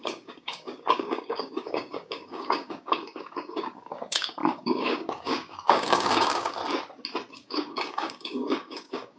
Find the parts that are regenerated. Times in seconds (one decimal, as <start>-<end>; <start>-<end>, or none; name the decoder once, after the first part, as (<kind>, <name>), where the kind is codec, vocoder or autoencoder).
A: 0.0-6.6 (codec, DAC); 7.3-9.2